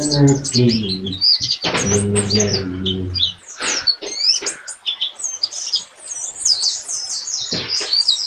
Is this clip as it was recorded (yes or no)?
yes